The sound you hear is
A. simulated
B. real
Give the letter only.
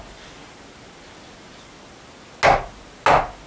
B